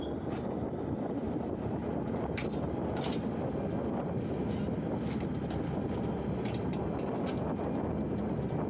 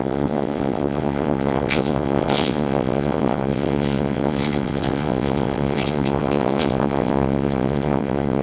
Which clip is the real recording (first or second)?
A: first